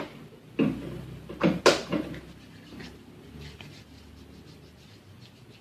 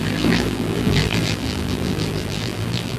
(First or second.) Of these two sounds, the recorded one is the first